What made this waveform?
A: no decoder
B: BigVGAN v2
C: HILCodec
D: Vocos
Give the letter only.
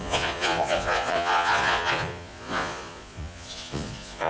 D